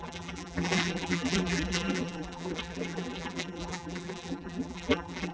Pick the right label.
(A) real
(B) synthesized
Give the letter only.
B